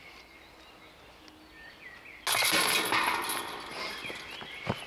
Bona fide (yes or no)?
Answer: yes